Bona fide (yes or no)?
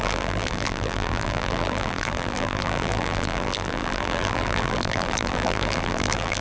no